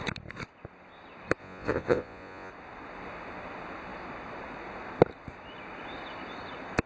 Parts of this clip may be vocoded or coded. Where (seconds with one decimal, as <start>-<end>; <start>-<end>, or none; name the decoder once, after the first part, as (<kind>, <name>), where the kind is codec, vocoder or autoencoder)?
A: 1.4-2.5 (vocoder, Vocos)